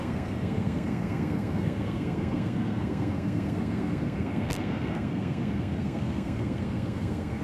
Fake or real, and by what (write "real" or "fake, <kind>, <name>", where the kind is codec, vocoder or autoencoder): fake, codec, SNAC